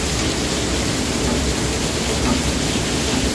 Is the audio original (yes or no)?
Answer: yes